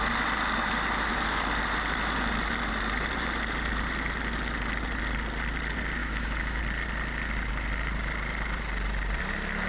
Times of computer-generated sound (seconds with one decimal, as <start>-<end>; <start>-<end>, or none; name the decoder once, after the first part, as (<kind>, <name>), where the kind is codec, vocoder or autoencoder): 6.0-6.6 (autoencoder, DAC-VAE)